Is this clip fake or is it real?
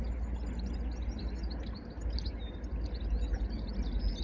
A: real